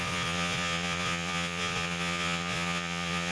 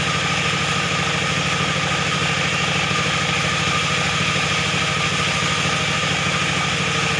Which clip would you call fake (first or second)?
first